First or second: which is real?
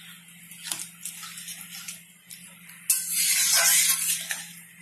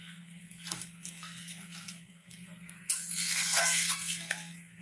first